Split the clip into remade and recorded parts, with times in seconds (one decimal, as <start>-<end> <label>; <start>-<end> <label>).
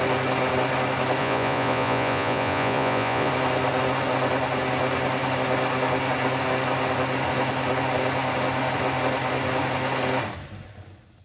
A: 0.0-1.2 recorded; 1.2-3.3 remade; 3.3-11.2 recorded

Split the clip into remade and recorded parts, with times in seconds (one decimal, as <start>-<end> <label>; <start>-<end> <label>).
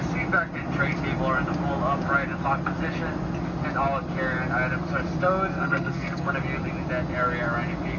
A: 0.0-5.5 recorded; 5.5-6.3 remade; 6.3-8.0 recorded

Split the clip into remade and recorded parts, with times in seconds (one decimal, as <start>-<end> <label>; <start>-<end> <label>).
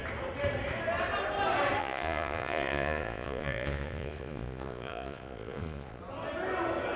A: 0.0-1.8 recorded; 1.8-6.0 remade; 6.0-7.0 recorded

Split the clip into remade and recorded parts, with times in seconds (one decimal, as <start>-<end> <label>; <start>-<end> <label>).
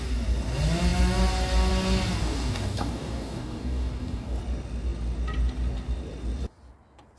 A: 0.0-2.2 recorded; 2.2-4.4 remade; 4.4-7.2 recorded